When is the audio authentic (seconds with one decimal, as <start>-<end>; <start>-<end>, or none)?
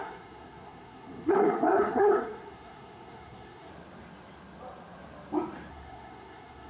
3.7-5.7